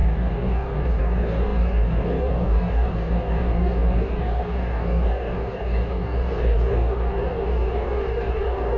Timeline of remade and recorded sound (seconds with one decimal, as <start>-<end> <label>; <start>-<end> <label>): 0.0-8.8 remade

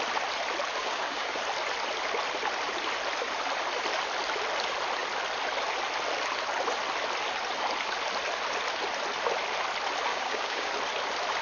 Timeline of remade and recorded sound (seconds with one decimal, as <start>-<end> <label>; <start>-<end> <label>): 0.0-0.8 recorded; 0.8-1.4 remade; 1.4-10.1 recorded; 10.1-10.7 remade; 10.7-11.4 recorded

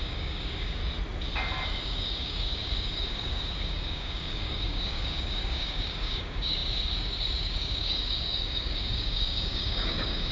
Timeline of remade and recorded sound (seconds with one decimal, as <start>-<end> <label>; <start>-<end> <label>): 0.0-0.8 remade; 0.8-1.8 recorded; 1.8-10.3 remade

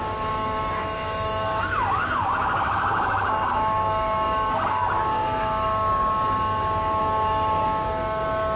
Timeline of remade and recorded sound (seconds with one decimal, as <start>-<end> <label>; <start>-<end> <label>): 0.0-8.6 remade